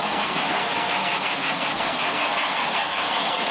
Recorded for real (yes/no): no